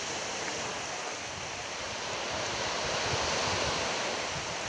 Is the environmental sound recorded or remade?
recorded